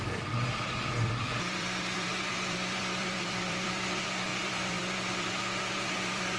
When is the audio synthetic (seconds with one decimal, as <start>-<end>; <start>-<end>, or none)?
0.0-6.4